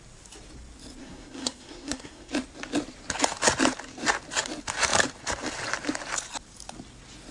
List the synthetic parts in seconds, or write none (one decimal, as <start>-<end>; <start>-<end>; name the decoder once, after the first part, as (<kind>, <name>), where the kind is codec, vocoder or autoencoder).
1.0-2.3 (codec, SNAC)

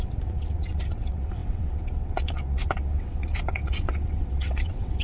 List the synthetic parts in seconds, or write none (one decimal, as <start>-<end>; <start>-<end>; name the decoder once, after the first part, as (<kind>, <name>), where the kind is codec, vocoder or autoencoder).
0.0-5.0 (vocoder, WaveNeXt)

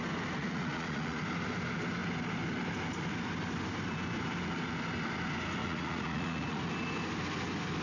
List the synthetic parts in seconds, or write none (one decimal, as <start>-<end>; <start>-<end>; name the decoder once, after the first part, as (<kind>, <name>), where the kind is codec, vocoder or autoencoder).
0.4-1.2 (vocoder, Vocos); 5.6-6.6

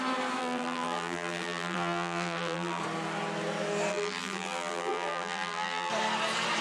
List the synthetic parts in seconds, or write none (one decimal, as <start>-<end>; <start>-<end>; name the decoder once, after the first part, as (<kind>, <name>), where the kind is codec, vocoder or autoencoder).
0.4-2.8 (vocoder, BigVGAN v2); 3.9-5.9

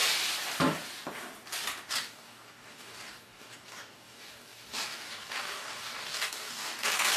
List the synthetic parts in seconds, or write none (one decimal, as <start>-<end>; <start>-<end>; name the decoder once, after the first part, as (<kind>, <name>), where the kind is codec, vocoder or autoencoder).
1.9-7.2 (codec, DAC)